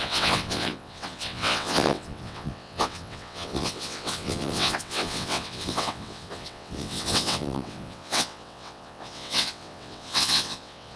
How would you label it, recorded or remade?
remade